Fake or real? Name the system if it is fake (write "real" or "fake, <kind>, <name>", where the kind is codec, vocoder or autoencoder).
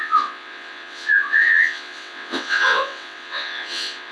fake, vocoder, WaveNeXt